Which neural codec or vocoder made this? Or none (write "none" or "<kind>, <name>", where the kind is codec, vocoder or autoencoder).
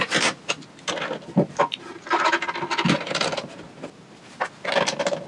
none